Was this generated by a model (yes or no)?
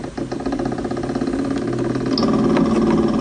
no